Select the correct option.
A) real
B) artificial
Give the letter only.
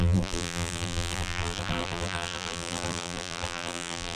B